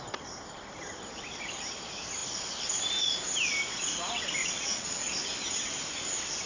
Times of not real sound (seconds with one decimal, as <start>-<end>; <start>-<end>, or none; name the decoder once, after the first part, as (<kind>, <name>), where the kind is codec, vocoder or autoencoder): 4.4-5.1 (vocoder, Vocos)